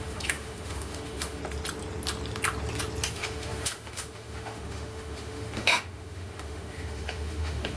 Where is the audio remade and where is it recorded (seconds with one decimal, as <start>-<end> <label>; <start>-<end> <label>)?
0.0-1.4 remade; 1.4-3.1 recorded; 3.1-7.8 remade